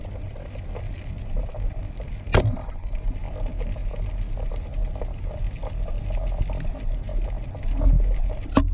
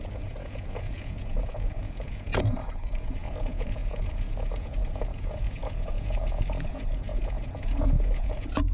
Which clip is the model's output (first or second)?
second